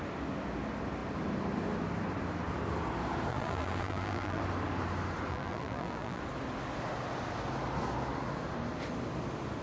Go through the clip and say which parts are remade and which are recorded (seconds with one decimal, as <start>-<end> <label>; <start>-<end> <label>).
0.0-3.3 recorded; 3.3-4.4 remade; 4.4-5.3 recorded; 5.3-6.2 remade; 6.2-9.6 recorded